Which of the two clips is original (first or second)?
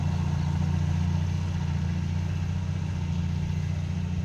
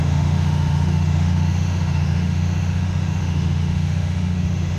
first